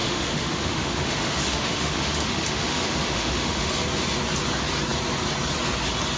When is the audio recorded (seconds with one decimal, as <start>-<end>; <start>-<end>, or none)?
3.7-6.2